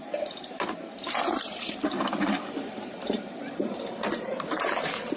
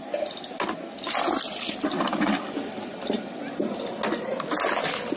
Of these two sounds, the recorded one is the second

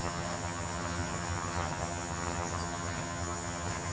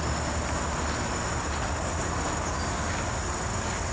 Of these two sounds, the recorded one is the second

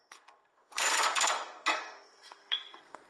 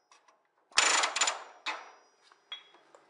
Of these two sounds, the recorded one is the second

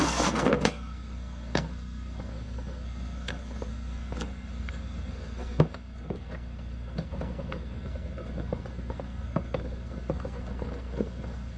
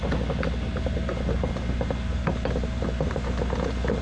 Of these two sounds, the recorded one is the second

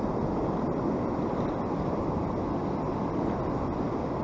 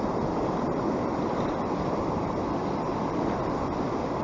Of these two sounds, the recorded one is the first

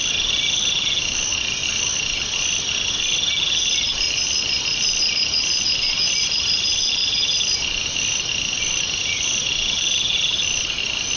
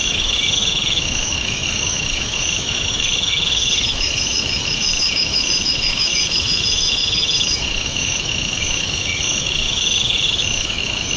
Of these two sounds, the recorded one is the first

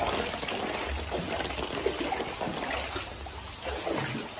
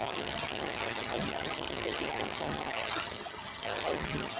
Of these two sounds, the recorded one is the first